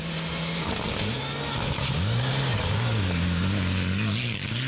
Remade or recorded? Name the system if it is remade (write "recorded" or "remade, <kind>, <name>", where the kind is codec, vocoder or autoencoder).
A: recorded